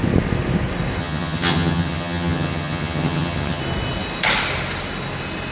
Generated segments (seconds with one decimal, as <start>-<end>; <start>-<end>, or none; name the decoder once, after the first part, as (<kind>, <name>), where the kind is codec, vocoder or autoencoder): 1.0-3.6 (vocoder, HiFi-GAN)

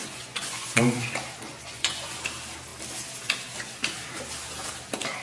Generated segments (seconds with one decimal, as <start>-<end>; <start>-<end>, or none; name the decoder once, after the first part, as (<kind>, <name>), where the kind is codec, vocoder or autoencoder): 0.0-0.8 (vocoder, Vocos); 1.5-2.2

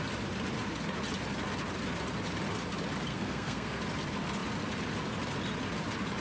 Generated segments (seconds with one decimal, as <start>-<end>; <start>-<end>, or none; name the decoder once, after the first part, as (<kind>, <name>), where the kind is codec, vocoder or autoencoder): 3.1-3.8 (codec, SNAC)

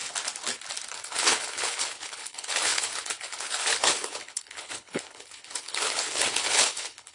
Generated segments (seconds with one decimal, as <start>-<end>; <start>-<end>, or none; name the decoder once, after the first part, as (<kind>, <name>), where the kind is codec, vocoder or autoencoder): 0.9-7.1 (codec, HILCodec)